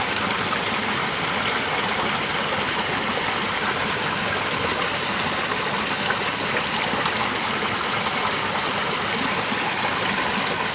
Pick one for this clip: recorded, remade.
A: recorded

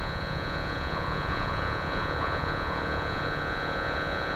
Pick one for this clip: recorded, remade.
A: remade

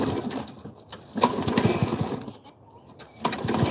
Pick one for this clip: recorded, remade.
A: recorded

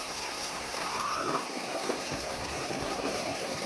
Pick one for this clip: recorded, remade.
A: remade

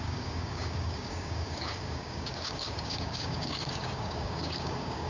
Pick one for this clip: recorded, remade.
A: remade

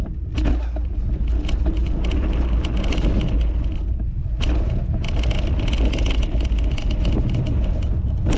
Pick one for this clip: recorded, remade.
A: recorded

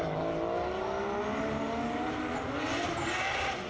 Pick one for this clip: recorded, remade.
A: recorded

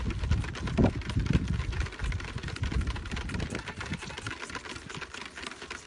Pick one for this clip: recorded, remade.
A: recorded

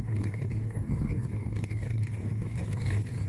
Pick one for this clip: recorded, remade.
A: remade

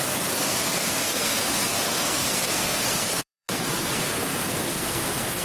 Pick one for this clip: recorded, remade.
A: remade